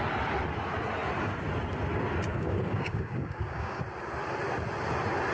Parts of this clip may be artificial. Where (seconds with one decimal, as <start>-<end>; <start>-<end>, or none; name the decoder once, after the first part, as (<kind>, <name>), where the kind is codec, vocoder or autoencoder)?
2.3-3.8 (codec, DAC)